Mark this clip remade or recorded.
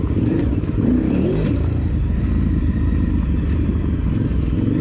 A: remade